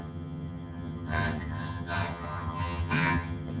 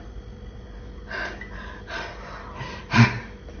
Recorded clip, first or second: second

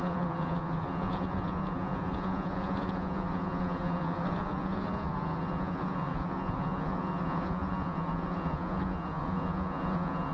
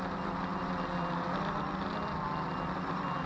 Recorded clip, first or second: second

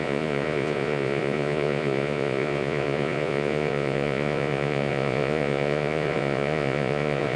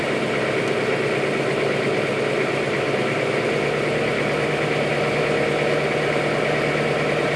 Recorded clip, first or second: second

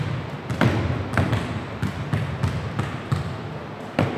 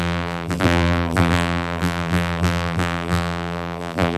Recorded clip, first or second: first